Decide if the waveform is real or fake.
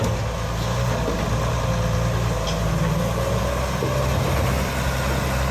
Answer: real